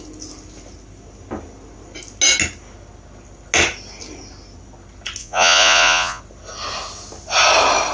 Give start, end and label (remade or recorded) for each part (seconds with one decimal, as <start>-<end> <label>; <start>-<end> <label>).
0.0-5.2 recorded; 5.2-6.2 remade; 6.2-7.9 recorded